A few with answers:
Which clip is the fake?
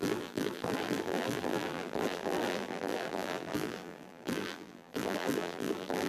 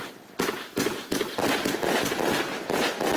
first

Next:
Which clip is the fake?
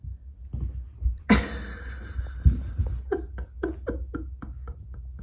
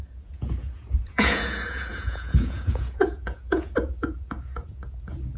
second